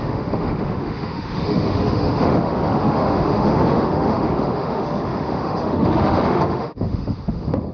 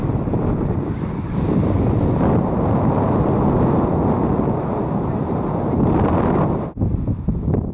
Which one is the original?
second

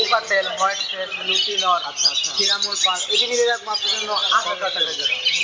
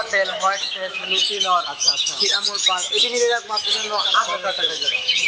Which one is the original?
first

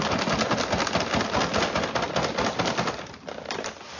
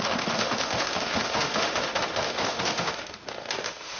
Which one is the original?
first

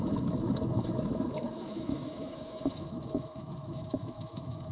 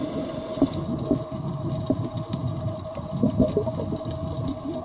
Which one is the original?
second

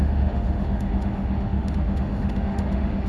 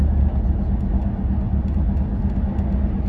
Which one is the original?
second